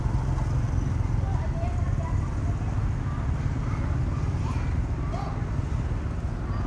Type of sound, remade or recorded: recorded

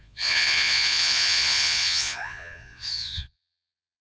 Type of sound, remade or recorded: remade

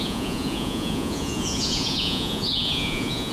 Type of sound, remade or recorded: remade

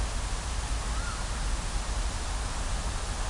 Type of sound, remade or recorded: recorded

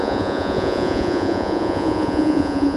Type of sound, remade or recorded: remade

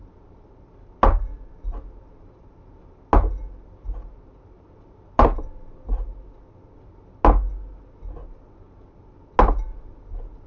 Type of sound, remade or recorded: recorded